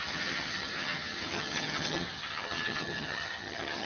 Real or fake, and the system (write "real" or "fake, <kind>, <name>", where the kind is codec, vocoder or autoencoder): fake, vocoder, HiFi-GAN